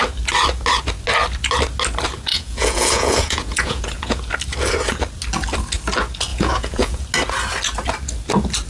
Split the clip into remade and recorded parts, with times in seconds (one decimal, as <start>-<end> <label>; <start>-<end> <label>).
0.0-2.3 recorded; 2.3-4.2 remade; 4.2-6.3 recorded; 6.3-7.0 remade; 7.0-8.7 recorded